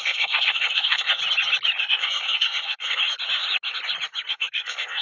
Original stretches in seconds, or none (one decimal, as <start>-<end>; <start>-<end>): 1.2-1.8; 3.0-4.3